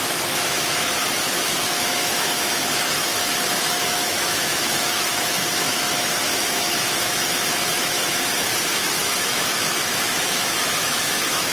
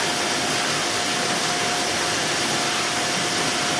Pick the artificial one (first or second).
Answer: first